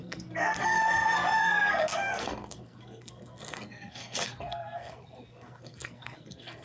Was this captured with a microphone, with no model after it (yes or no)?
no